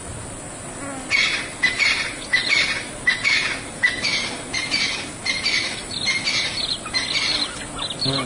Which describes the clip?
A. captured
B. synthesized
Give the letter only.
A